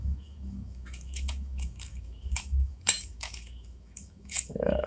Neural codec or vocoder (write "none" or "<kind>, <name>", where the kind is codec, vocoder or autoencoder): autoencoder, DAC-VAE